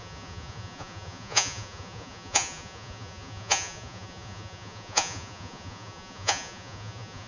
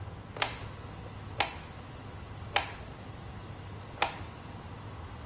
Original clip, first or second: second